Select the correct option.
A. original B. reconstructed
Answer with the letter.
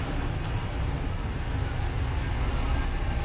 A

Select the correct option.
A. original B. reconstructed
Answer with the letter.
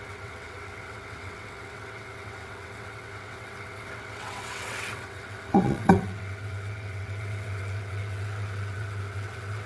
B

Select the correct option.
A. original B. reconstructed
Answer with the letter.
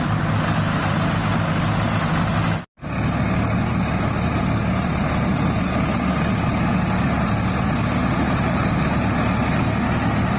A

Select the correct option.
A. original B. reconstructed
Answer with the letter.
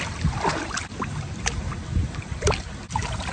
A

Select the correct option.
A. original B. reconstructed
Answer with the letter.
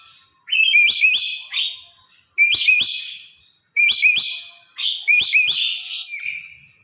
A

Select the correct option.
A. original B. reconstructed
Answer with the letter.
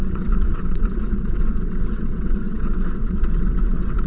B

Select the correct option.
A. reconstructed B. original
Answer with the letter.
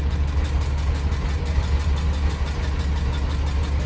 B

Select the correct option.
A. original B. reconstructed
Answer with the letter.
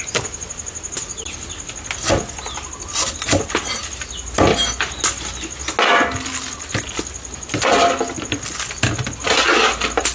A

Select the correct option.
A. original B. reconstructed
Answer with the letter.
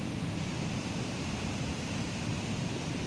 A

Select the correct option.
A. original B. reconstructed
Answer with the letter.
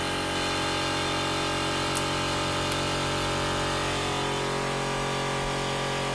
A